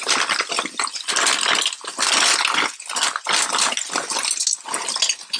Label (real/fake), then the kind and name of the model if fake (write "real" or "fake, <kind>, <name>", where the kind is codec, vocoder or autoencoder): real